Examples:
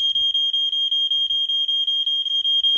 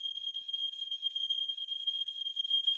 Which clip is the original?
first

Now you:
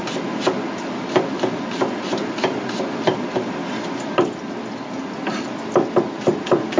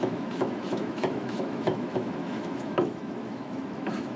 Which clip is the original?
first